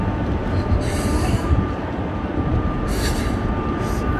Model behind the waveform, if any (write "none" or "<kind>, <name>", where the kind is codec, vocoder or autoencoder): vocoder, BigVGAN v2